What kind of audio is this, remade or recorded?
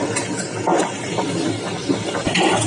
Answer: recorded